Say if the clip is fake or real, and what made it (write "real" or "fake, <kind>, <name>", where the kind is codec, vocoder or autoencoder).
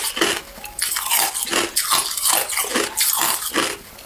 real